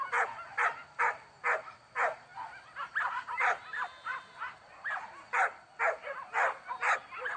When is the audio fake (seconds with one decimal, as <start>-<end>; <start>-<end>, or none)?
none